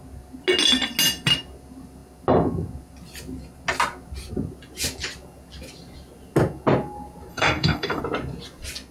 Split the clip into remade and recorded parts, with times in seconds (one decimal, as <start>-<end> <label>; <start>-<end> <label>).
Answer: 0.0-7.3 recorded; 7.3-8.0 remade; 8.0-8.9 recorded